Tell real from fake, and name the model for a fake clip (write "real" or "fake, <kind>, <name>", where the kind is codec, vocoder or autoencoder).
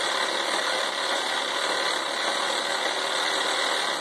real